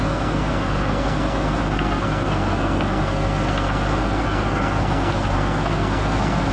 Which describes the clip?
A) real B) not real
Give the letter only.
B